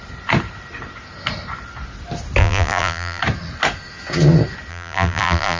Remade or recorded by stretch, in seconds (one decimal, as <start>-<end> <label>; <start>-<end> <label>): 0.0-2.4 recorded; 2.4-3.2 remade; 3.2-4.7 recorded; 4.7-5.6 remade